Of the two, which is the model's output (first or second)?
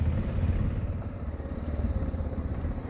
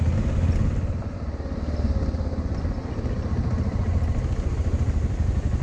first